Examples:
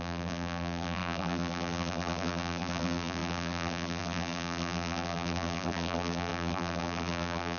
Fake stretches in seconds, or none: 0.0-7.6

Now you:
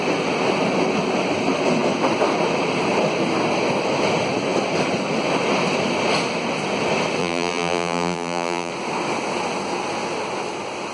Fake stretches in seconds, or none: 7.2-8.7

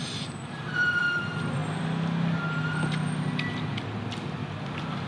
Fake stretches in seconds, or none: 0.0-1.6

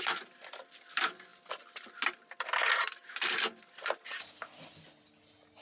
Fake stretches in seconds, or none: none

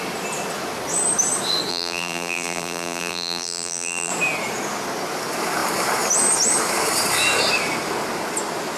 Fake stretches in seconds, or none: 1.7-4.1

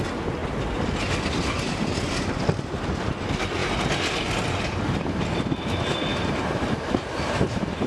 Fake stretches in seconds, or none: 6.1-7.9

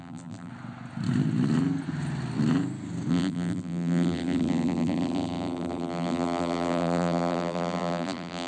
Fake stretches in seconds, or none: 0.0-0.5; 3.1-8.5

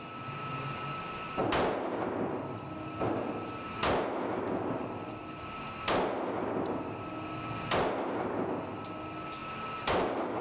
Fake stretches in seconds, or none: none